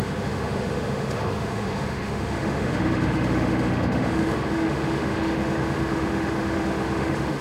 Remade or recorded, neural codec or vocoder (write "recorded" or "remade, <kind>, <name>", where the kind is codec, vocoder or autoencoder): remade, autoencoder, DAC-VAE